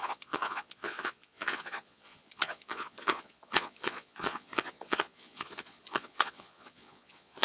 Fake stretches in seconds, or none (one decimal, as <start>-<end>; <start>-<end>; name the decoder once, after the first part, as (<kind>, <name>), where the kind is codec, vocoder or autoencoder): 0.0-7.4 (vocoder, Vocos)